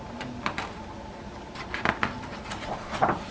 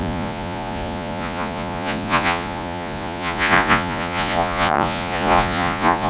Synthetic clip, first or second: second